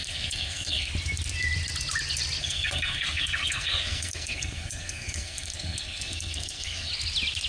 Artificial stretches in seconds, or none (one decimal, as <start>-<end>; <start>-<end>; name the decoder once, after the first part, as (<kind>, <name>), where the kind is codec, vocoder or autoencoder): 0.0-0.9 (codec, SNAC); 2.4-6.9